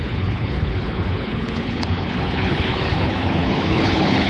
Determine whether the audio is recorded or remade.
remade